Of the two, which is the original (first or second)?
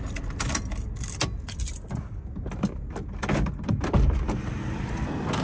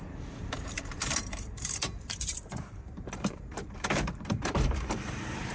first